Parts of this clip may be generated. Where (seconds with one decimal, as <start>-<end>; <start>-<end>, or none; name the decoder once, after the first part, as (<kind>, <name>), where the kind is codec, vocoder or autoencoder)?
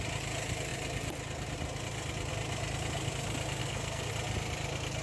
3.6-4.1 (codec, SNAC)